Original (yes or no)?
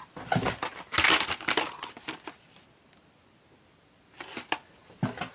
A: yes